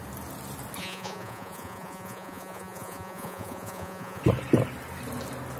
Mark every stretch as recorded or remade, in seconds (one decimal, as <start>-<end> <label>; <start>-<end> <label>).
0.0-0.8 recorded; 0.8-4.2 remade; 4.2-5.6 recorded